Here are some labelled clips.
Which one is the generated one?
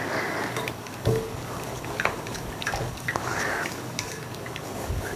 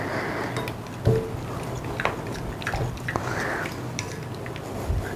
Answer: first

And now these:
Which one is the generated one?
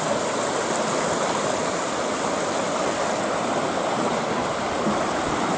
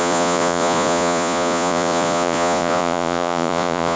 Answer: second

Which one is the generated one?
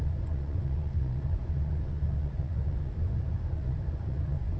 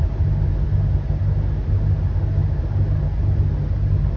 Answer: first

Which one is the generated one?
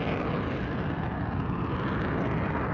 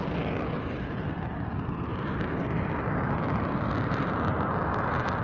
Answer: second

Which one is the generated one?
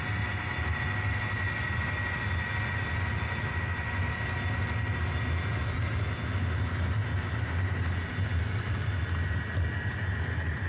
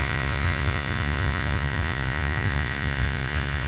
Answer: second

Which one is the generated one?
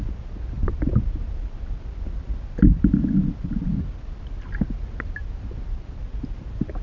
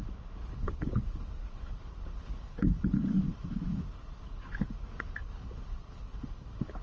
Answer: second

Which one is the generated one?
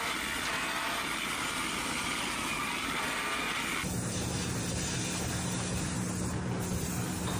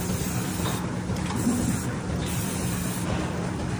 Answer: second